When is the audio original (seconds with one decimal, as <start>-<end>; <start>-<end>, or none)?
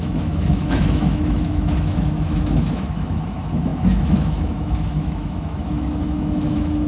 none